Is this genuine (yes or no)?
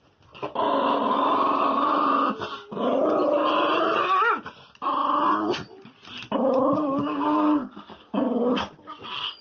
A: yes